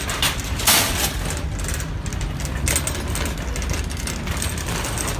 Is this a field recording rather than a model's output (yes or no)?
yes